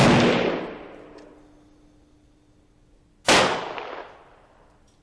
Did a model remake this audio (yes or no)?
no